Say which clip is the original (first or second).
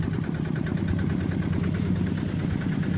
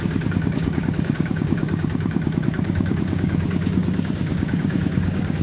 first